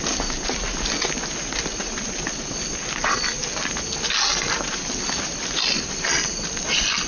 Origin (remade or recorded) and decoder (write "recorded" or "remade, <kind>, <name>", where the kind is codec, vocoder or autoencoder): recorded